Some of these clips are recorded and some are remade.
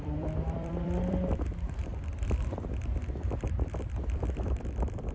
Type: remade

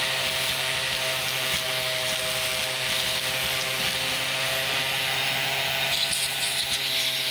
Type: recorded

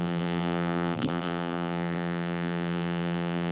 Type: remade